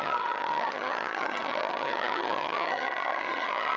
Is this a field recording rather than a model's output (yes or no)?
no